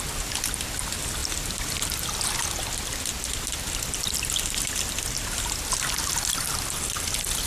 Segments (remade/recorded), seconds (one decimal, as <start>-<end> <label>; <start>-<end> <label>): 0.0-1.2 recorded; 1.2-2.2 remade; 2.2-7.5 recorded